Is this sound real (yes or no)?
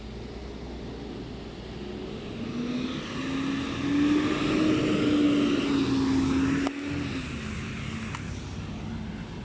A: yes